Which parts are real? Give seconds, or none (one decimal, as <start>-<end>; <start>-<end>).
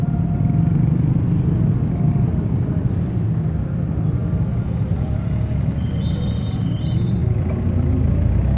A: 0.0-8.6